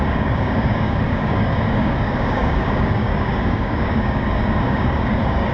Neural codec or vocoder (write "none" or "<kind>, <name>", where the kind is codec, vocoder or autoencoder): codec, DAC